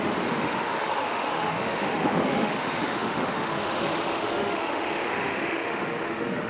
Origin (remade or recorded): remade